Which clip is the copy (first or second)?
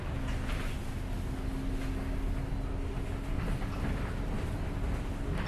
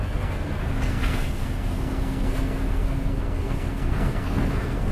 second